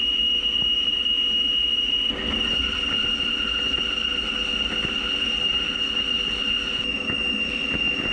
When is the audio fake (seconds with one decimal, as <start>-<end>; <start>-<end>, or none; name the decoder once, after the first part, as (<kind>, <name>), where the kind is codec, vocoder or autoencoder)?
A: none